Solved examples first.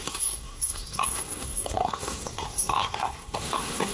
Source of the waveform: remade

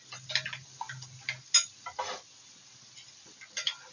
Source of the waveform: recorded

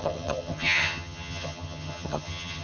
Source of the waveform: remade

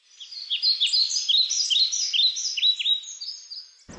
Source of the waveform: recorded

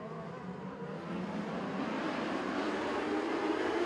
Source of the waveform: remade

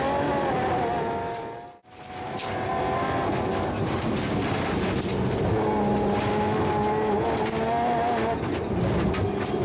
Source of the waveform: recorded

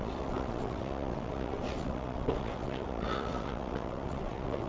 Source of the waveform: remade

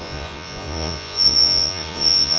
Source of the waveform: remade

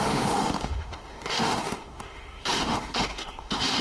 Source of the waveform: remade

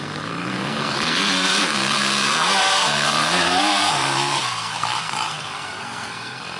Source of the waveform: remade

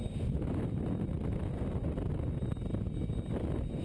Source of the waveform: recorded